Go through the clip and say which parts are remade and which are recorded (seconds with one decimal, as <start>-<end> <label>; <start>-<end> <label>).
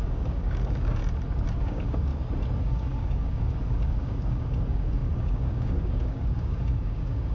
0.0-1.0 remade; 1.0-1.6 recorded; 1.6-2.1 remade; 2.1-2.6 recorded; 2.6-7.3 remade